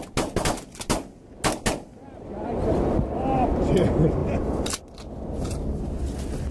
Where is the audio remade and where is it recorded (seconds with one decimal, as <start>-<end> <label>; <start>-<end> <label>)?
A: 0.0-4.2 recorded; 4.2-5.1 remade; 5.1-6.5 recorded